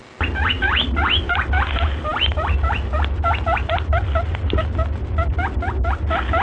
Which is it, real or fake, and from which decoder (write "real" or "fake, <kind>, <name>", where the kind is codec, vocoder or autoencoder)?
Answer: real